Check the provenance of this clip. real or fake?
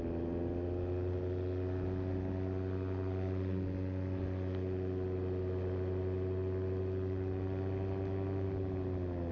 real